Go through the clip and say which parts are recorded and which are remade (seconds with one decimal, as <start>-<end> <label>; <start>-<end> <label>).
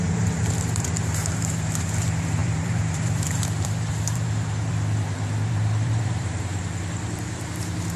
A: 0.0-6.5 remade; 6.5-7.1 recorded; 7.1-8.0 remade